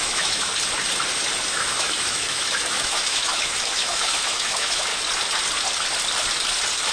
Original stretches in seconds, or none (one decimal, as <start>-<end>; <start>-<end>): 0.5-1.5; 4.9-6.9